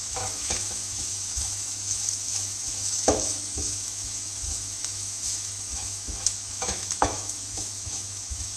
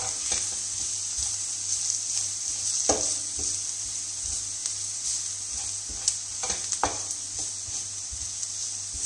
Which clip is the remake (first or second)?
first